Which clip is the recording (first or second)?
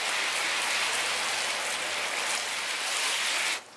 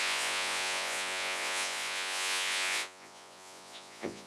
first